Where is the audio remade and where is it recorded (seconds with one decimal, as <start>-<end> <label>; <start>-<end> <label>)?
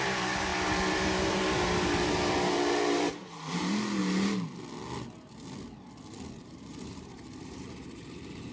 0.0-4.0 remade; 4.0-6.4 recorded; 6.4-8.5 remade